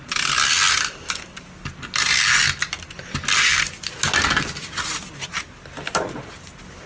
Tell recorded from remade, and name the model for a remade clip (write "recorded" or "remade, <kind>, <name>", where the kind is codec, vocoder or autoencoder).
recorded